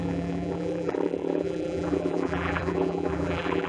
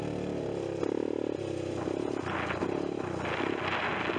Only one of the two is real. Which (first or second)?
second